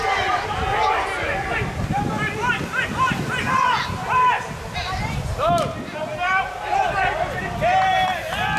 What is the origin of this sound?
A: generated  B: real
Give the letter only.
B